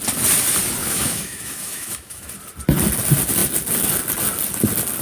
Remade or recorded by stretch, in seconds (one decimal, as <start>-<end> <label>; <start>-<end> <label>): 0.0-0.8 recorded; 0.8-2.3 remade; 2.3-5.0 recorded